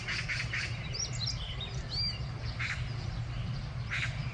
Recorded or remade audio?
recorded